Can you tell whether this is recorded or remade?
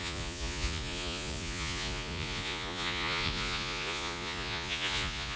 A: remade